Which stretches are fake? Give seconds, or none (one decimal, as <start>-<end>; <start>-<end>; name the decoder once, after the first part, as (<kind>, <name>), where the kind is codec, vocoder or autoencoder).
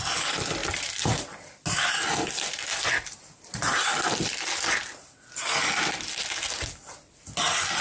none